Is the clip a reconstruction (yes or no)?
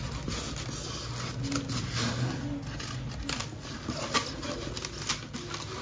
no